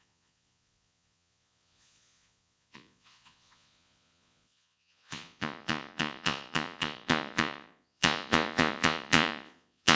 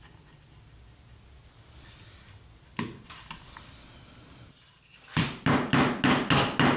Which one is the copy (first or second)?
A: first